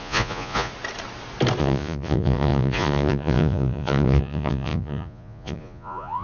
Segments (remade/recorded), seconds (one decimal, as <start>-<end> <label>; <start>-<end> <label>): 0.0-0.7 remade; 0.7-1.6 recorded; 1.6-6.2 remade